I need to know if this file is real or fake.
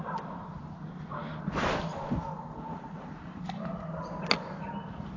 real